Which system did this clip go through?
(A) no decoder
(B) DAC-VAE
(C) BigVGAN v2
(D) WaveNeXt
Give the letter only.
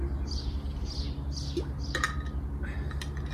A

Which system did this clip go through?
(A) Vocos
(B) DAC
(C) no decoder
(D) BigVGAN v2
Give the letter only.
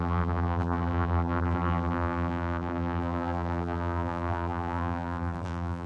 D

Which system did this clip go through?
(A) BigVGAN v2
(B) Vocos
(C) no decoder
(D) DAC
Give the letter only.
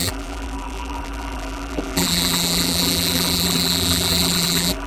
A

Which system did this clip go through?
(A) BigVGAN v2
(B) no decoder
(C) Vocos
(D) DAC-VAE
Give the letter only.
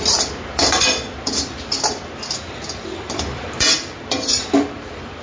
A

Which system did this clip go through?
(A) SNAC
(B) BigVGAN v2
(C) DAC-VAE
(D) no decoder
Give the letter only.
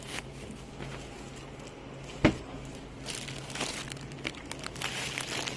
D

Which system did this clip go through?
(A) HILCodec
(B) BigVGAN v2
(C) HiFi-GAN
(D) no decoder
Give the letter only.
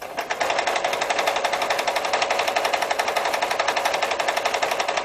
D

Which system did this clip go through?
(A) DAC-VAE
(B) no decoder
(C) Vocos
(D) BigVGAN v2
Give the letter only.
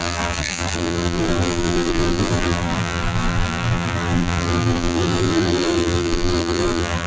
D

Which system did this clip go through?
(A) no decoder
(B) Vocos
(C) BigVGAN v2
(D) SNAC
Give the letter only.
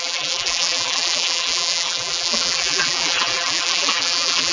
C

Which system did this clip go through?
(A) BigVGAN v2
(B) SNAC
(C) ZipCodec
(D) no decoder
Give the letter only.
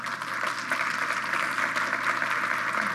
D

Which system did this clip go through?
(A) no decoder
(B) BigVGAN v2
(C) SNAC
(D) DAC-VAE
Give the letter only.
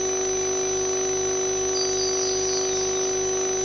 A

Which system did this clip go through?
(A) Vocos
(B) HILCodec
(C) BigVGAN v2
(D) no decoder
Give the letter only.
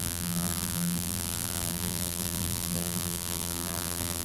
C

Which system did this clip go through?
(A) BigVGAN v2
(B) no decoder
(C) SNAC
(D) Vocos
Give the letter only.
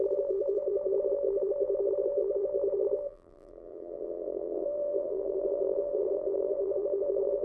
A